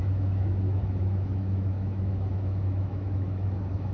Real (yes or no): no